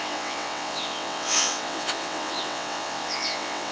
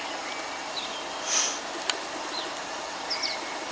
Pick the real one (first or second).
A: second